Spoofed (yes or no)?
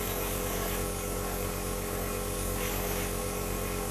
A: yes